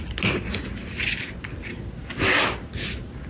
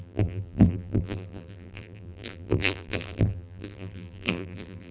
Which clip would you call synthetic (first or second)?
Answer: second